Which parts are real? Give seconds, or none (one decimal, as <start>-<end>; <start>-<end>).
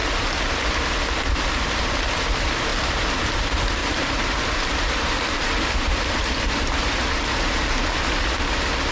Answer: 0.0-2.7; 3.3-3.8; 7.5-8.9